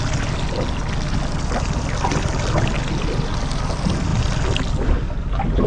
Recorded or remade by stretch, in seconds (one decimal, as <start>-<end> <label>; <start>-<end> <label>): 0.0-5.7 recorded